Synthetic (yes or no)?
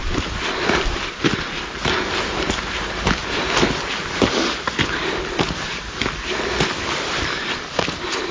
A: no